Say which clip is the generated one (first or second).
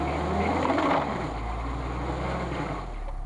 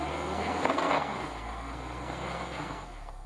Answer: second